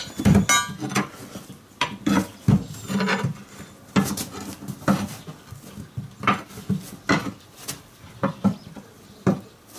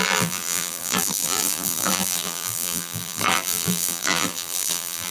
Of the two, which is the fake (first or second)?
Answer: second